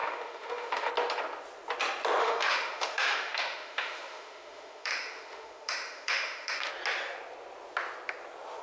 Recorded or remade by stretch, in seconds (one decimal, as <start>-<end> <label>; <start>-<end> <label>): 0.0-0.9 remade; 0.9-2.2 recorded; 2.2-6.7 remade; 6.7-8.6 recorded